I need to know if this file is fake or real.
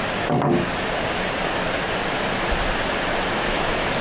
real